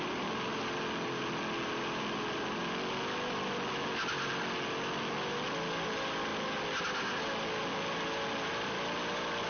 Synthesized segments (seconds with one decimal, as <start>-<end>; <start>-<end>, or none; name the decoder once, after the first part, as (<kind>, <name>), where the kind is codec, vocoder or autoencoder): none